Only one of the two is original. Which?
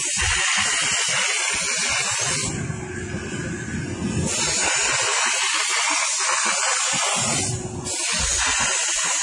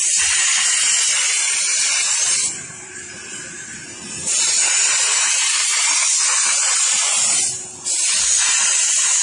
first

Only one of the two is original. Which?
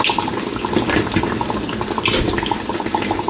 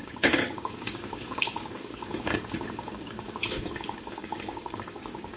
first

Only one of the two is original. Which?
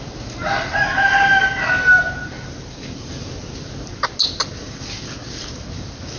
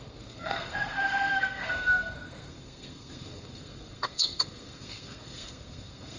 first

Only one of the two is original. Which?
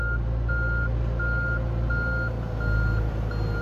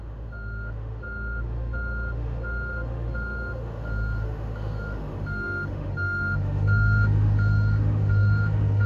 first